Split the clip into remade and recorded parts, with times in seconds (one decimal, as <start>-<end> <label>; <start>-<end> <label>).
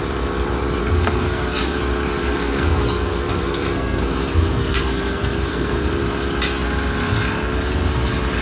0.0-0.8 recorded; 0.8-1.8 remade; 1.8-2.2 recorded; 2.2-5.9 remade; 5.9-8.4 recorded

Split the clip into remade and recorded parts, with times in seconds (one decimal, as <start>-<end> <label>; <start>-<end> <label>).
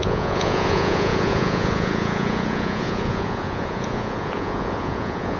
0.0-5.4 remade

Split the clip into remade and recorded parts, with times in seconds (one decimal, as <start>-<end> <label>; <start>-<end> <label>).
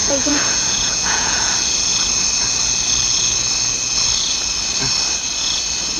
0.0-1.5 remade; 1.5-6.0 recorded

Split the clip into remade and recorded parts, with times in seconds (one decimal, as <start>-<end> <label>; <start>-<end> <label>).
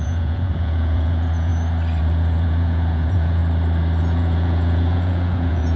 0.0-1.5 remade; 1.5-2.0 recorded; 2.0-3.4 remade; 3.4-4.0 recorded; 4.0-5.8 remade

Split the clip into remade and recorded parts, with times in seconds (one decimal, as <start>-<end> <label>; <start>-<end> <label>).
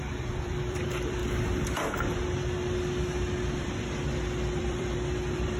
0.0-1.2 remade; 1.2-3.6 recorded; 3.6-5.6 remade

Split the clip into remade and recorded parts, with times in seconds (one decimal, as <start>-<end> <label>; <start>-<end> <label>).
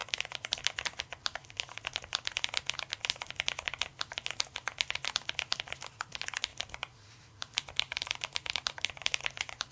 0.0-0.6 remade; 0.6-6.5 recorded; 6.5-9.2 remade; 9.2-9.7 recorded